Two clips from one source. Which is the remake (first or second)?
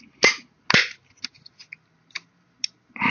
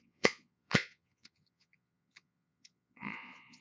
second